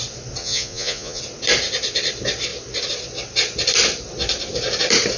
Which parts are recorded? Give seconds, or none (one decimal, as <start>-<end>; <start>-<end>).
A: 0.0-0.4; 1.2-5.2